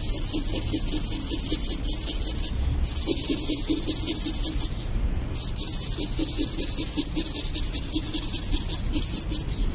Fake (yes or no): no